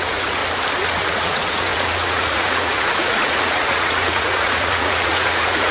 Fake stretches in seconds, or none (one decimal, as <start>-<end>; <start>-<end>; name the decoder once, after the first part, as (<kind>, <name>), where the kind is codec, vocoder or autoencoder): 0.0-0.4 (vocoder, Vocos); 1.0-5.7